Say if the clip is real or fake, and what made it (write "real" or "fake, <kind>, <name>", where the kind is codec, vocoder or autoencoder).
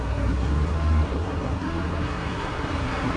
fake, codec, SNAC